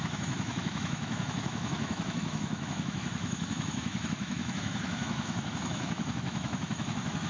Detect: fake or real fake